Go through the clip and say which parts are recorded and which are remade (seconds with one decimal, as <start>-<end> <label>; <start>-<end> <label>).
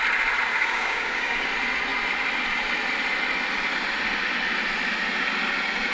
0.0-0.5 recorded; 0.5-1.5 remade; 1.5-5.9 recorded